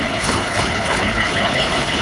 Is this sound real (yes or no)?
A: no